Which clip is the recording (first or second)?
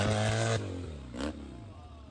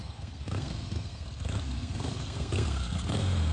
first